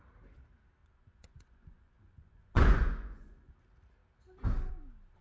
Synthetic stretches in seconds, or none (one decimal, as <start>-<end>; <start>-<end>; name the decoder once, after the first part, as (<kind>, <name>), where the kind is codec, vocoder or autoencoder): 0.8-3.5 (vocoder, Vocos)